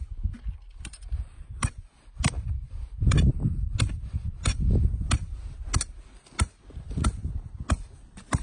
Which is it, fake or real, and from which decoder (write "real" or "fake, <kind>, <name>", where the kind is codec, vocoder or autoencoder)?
real